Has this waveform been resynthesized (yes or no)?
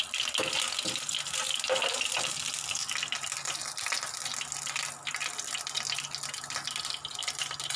no